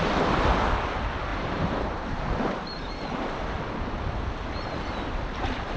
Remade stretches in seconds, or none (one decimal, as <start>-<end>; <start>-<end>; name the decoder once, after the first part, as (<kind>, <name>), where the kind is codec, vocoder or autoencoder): 1.3-3.1 (vocoder, BigVGAN v2)